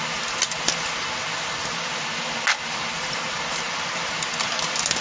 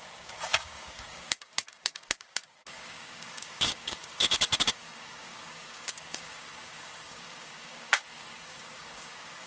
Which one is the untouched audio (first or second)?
first